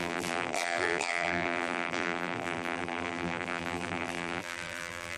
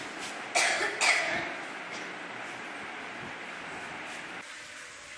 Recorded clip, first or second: second